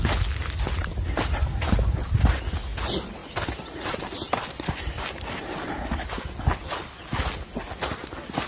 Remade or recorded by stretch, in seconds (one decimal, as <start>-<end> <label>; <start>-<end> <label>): 0.0-8.5 recorded